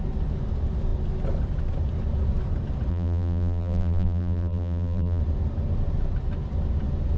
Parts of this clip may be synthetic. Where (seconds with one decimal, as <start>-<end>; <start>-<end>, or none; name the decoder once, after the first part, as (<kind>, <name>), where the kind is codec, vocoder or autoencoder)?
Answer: 2.9-5.2 (vocoder, BigVGAN v2)